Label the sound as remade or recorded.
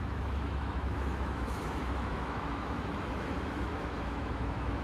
remade